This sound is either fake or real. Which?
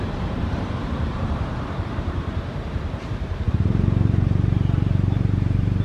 fake